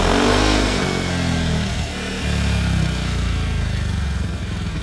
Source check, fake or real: fake